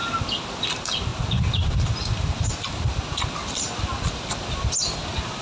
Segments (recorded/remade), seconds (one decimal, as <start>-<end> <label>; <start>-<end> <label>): 0.0-5.4 recorded